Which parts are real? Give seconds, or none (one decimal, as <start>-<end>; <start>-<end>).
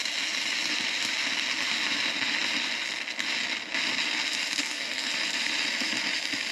0.0-4.6; 5.1-6.5